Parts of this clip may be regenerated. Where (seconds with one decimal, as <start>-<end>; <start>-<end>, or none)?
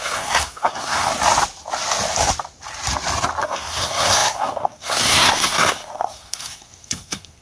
0.0-1.1; 3.4-7.4